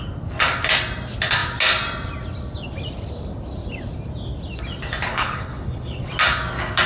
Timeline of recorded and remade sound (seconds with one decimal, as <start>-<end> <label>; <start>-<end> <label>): 0.0-5.1 recorded; 5.1-6.0 remade; 6.0-6.9 recorded